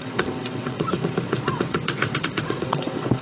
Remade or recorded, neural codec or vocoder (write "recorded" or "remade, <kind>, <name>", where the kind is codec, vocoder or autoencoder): remade, vocoder, WaveNeXt